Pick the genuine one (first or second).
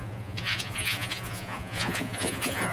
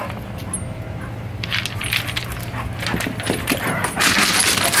second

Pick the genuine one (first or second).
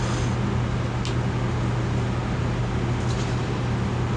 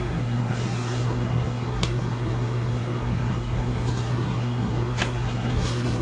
first